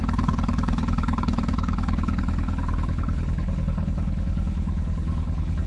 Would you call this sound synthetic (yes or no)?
yes